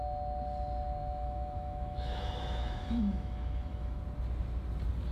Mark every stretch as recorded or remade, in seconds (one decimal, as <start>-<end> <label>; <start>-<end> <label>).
0.0-1.0 recorded; 1.0-4.0 remade; 4.0-5.1 recorded